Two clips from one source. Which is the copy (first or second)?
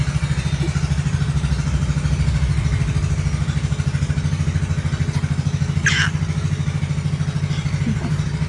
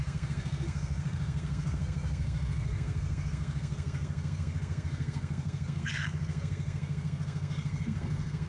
second